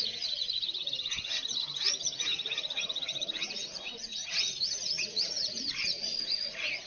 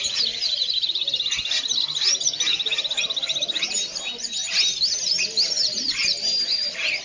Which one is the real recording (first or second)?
second